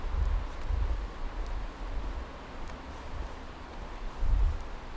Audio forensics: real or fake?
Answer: real